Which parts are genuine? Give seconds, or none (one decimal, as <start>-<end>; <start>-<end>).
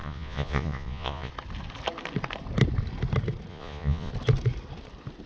1.3-3.5; 4.1-5.3